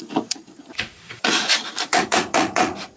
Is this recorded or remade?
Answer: remade